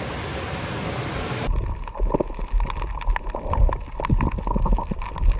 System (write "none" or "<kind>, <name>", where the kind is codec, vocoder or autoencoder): none